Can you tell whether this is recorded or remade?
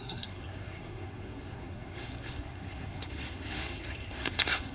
remade